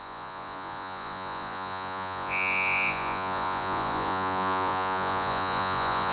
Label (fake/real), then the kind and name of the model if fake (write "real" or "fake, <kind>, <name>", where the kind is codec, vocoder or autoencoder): fake, vocoder, Vocos